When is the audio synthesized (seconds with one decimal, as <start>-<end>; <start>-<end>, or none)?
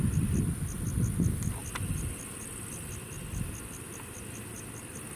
none